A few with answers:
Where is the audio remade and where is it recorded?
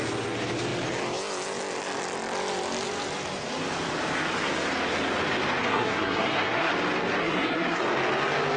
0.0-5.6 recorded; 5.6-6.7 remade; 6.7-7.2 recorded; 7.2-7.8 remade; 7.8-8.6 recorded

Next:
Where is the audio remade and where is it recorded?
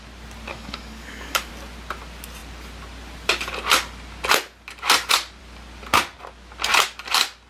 0.0-0.5 recorded; 0.5-1.5 remade; 1.5-7.5 recorded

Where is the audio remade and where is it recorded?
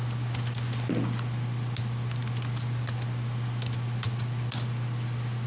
0.0-5.5 recorded